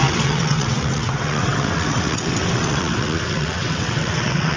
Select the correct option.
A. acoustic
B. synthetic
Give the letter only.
B